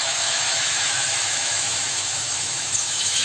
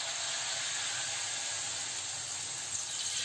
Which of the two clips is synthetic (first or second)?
first